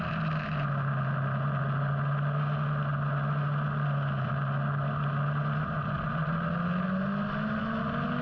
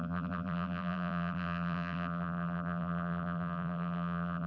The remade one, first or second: second